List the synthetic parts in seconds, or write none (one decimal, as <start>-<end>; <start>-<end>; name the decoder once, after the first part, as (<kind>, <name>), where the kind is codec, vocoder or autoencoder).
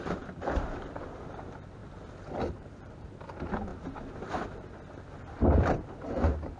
0.0-1.8 (vocoder, BigVGAN v2); 2.5-3.7; 5.9-6.6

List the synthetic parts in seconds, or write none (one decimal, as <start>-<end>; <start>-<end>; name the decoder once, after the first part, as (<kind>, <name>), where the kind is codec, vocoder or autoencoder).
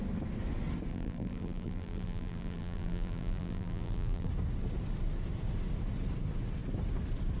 0.9-4.3 (vocoder, BigVGAN v2)